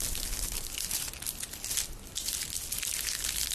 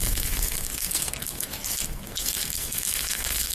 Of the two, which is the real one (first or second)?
first